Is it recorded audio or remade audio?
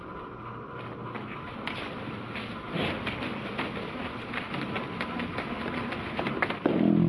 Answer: recorded